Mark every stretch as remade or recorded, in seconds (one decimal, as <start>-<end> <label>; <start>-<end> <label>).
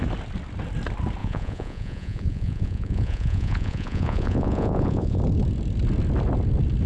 0.0-1.2 recorded; 1.2-5.2 remade; 5.2-6.9 recorded